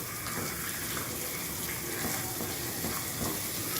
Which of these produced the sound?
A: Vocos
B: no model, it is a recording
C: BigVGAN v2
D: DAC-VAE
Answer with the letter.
B